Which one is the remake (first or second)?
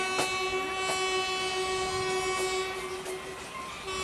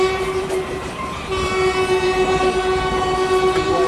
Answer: second